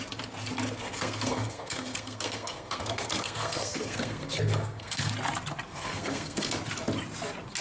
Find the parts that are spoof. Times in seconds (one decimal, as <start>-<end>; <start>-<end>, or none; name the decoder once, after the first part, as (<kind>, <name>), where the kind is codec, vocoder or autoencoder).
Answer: 0.8-5.1 (codec, SNAC); 5.7-6.5